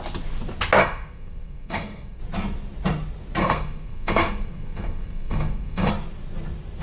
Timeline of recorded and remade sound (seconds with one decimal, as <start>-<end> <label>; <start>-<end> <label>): 0.0-0.8 recorded; 0.8-2.2 remade; 2.2-3.4 recorded; 3.4-5.9 remade; 5.9-6.8 recorded